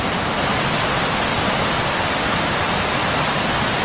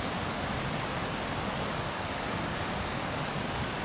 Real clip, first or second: first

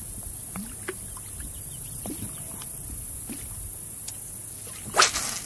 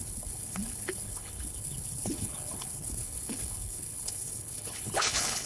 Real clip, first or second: first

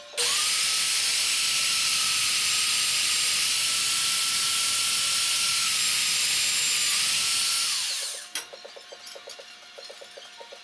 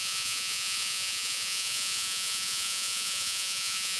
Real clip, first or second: first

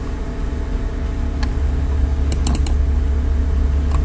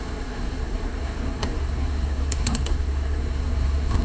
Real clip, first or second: first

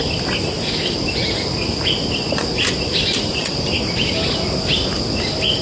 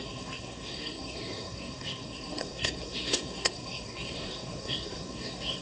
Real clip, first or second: first